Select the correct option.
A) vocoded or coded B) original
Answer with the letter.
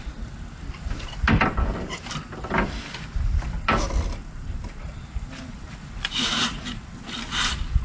B